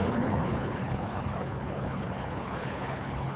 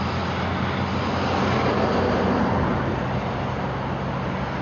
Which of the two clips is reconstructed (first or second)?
first